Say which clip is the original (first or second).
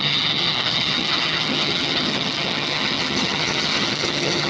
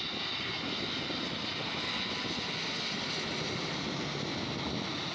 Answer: second